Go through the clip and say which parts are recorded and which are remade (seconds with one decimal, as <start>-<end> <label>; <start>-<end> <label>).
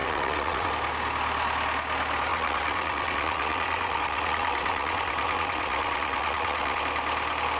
0.0-0.7 remade; 0.7-2.3 recorded; 2.3-6.8 remade; 6.8-7.6 recorded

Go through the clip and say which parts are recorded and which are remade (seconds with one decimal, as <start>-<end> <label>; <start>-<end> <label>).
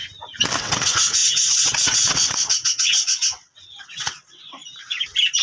0.0-0.6 recorded; 0.6-4.6 remade; 4.6-5.4 recorded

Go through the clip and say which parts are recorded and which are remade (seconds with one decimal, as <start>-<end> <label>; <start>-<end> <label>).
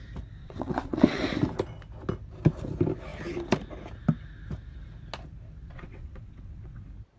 0.0-0.4 recorded; 0.4-1.2 remade; 1.2-5.6 recorded; 5.6-6.8 remade; 6.8-7.2 recorded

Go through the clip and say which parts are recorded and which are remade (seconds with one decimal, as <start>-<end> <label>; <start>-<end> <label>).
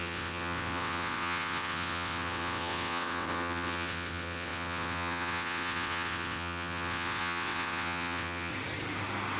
0.0-8.5 remade; 8.5-9.4 recorded